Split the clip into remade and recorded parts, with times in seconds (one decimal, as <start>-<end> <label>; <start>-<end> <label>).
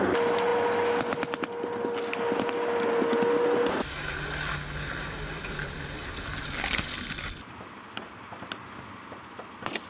0.0-9.9 recorded